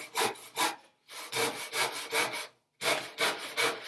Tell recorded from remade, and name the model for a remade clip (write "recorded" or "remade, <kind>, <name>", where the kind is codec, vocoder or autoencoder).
recorded